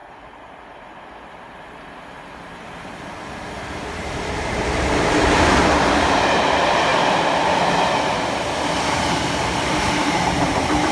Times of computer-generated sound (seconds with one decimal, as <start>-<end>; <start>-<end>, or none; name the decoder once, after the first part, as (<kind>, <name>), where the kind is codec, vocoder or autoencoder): 4.3-6.9 (vocoder, BigVGAN v2); 9.0-10.9